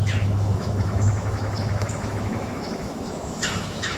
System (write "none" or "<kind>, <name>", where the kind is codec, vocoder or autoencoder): autoencoder, DAC-VAE